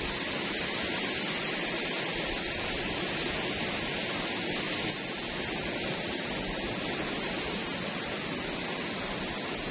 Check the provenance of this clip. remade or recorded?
recorded